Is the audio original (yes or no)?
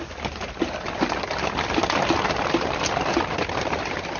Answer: yes